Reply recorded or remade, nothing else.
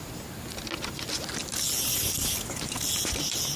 recorded